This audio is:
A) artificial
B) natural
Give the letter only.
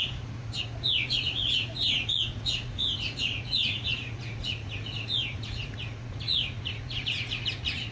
A